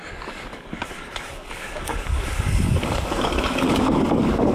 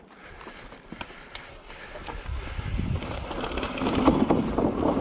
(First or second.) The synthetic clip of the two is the first